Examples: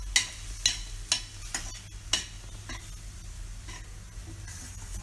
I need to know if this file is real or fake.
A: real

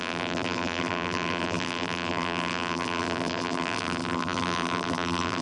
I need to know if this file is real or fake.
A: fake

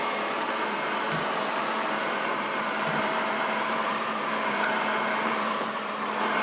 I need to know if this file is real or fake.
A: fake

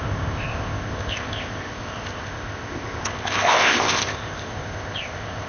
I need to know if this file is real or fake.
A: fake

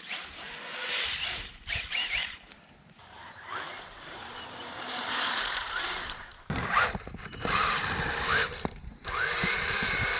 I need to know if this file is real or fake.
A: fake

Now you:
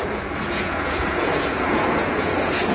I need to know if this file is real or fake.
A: fake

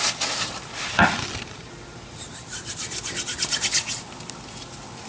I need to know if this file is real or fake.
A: real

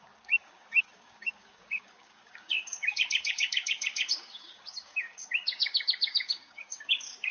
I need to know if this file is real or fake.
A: fake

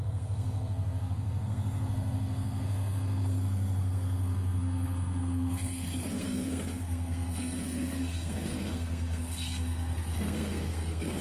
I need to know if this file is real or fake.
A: fake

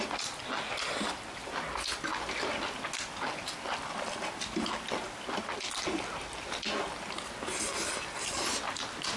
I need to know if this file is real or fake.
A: real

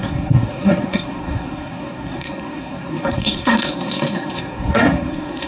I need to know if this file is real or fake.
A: fake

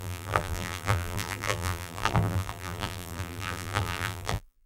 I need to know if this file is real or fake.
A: fake